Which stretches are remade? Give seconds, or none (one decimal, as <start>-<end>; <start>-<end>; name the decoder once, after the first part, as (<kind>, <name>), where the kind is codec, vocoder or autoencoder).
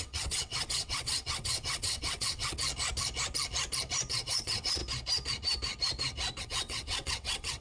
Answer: 0.0-2.6 (vocoder, WaveNeXt); 4.1-4.8; 6.4-7.6